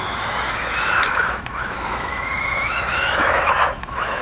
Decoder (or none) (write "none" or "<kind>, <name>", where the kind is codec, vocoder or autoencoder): autoencoder, DAC-VAE